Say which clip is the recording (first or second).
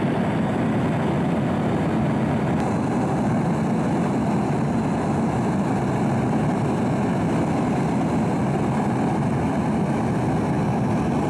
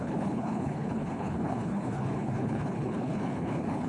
first